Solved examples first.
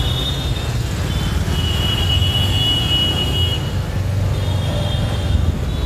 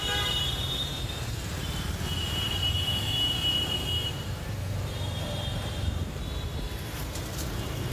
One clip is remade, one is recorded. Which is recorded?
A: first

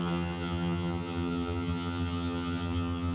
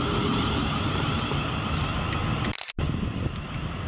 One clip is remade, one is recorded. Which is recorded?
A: second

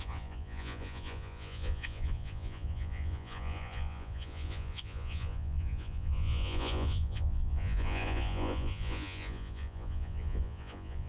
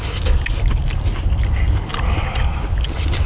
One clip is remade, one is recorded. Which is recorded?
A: second